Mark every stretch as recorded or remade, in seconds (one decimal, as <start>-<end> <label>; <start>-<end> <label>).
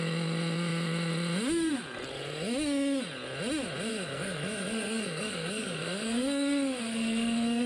0.0-3.9 recorded; 3.9-7.7 remade